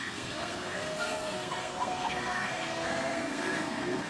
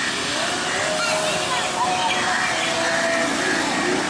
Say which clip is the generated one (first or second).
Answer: first